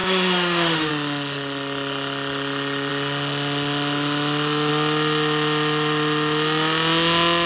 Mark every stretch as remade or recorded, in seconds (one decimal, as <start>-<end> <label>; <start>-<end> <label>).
0.0-0.9 remade; 0.9-7.5 recorded